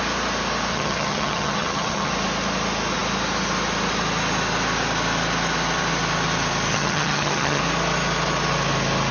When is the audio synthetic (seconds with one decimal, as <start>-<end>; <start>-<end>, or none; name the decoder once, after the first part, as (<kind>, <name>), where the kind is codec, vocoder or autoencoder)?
0.7-2.1 (vocoder, HiFi-GAN); 6.7-7.6

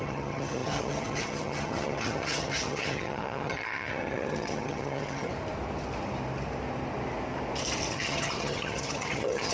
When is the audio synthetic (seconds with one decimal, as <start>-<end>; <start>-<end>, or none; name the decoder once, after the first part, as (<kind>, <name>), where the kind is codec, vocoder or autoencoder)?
0.0-5.3 (vocoder, HiFi-GAN); 7.9-9.5

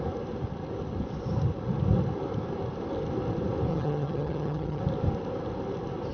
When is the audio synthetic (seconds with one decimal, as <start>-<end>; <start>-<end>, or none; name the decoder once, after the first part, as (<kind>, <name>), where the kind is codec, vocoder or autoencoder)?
3.7-4.8 (vocoder, HiFi-GAN)